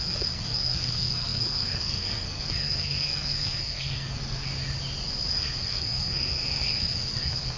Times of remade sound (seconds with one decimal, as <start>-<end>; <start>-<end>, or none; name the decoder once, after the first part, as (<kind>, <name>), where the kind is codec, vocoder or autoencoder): 0.0-4.5 (codec, SNAC); 5.3-7.6